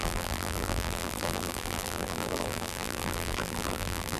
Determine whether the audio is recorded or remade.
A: remade